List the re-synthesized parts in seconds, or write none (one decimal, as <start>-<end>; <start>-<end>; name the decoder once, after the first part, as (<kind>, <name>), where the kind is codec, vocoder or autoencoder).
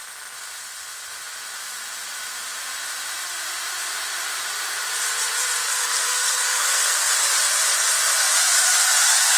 5.7-7.1 (codec, SNAC)